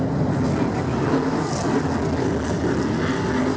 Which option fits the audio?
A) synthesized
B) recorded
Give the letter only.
B